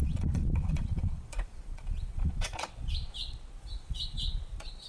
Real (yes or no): no